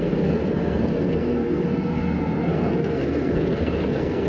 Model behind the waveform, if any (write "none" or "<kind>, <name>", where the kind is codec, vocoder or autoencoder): codec, SNAC